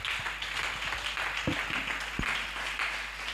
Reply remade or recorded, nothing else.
recorded